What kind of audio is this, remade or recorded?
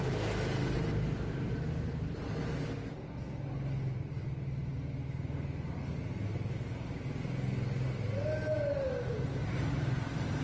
recorded